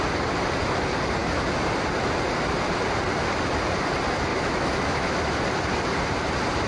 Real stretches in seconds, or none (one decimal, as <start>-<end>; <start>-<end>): 0.0-4.3; 5.4-6.7